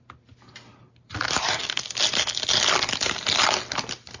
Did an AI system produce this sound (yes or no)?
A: no